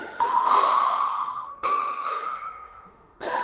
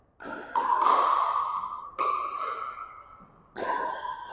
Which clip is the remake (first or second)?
first